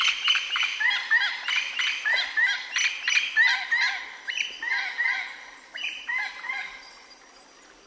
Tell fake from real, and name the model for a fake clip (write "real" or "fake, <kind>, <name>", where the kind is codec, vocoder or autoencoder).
real